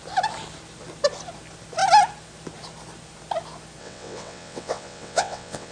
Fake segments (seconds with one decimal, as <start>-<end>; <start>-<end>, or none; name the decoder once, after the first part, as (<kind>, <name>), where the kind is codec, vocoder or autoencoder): 3.8-5.7 (vocoder, WaveNeXt)